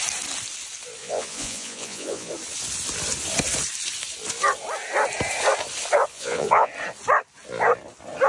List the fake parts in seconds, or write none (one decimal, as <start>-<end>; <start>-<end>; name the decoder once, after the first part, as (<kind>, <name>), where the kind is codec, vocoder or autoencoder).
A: 1.0-2.3 (vocoder, Vocos); 6.1-6.7